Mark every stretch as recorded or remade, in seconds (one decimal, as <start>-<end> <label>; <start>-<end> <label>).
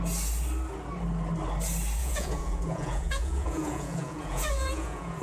0.0-2.0 recorded; 2.0-5.2 remade